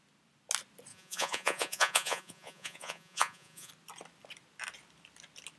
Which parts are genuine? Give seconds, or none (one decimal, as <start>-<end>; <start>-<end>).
0.0-0.9; 3.7-5.6